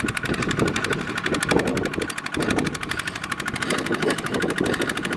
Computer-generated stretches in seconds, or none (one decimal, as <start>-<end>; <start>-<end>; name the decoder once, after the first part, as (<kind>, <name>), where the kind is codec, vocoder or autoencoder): none